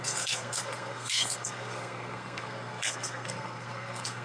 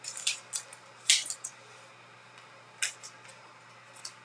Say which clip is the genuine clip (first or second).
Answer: second